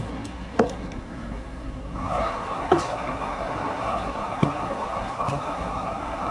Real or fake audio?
fake